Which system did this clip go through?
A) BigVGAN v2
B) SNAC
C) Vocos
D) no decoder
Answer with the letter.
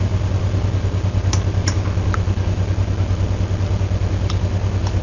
D